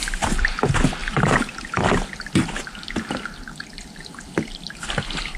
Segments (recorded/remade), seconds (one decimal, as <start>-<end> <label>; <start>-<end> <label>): 0.0-5.4 recorded